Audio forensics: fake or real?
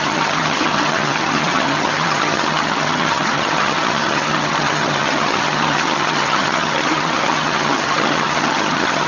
fake